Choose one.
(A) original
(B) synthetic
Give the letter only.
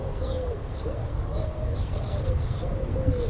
B